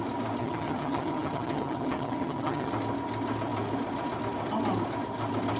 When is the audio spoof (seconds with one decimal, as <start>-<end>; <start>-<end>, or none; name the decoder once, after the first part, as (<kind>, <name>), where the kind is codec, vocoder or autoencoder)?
0.4-2.7 (vocoder, HiFi-GAN)